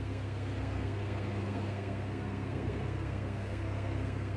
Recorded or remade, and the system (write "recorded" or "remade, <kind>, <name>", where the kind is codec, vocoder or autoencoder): remade, codec, SNAC